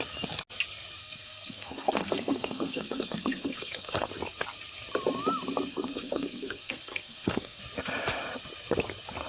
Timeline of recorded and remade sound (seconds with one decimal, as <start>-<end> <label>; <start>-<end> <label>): 0.0-1.0 recorded; 1.0-4.1 remade; 4.1-5.7 recorded; 5.7-7.6 remade; 7.6-9.3 recorded